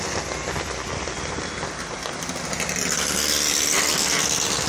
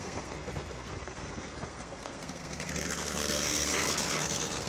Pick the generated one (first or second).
second